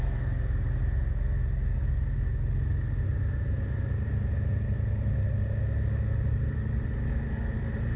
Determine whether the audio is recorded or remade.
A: recorded